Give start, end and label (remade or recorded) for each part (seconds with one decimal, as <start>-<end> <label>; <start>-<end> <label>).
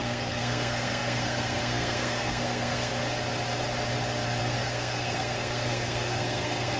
0.0-2.9 remade; 2.9-4.4 recorded; 4.4-6.8 remade